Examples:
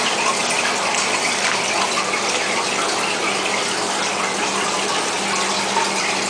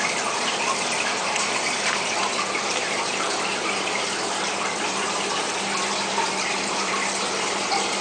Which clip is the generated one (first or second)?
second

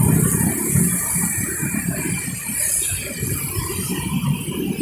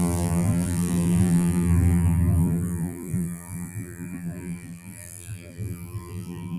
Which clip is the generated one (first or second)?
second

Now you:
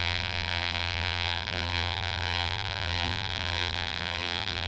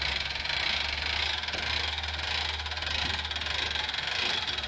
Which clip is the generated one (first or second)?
first